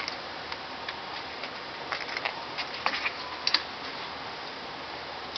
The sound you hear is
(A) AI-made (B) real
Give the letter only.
B